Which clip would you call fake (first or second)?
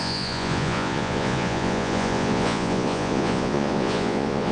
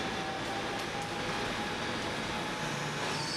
first